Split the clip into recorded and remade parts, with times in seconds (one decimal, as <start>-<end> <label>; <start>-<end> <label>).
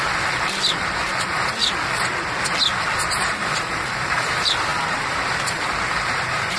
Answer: 0.0-1.6 remade; 1.6-2.8 recorded; 2.8-6.6 remade